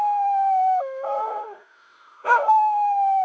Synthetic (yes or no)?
yes